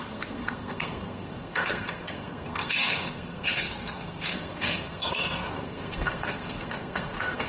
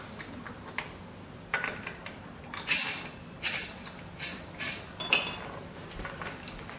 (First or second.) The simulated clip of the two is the first